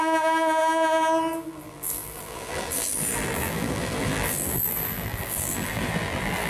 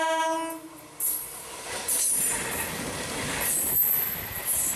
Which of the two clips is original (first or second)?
second